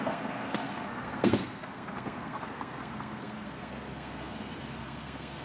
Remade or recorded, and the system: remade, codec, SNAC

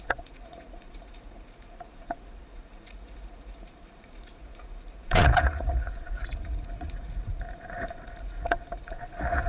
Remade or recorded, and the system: remade, vocoder, Vocos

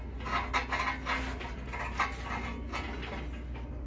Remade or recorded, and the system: recorded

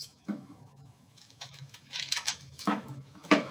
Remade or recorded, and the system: remade, autoencoder, DAC-VAE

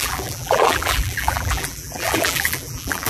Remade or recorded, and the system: remade, vocoder, BigVGAN v2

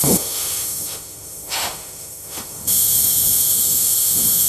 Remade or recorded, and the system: remade, autoencoder, DAC-VAE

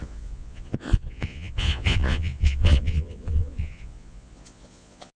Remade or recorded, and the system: remade, vocoder, Vocos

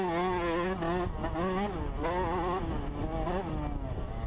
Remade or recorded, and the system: recorded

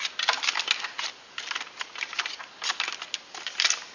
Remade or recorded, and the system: recorded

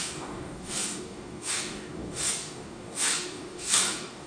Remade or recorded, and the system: remade, codec, DAC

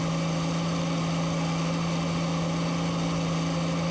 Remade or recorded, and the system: recorded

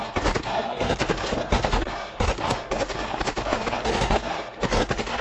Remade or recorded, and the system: remade, codec, SNAC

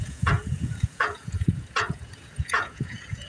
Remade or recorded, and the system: remade, vocoder, Vocos